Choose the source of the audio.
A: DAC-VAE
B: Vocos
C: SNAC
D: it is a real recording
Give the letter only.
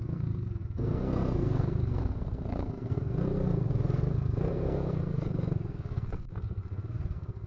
C